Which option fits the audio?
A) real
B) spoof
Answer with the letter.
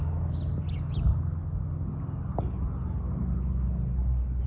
A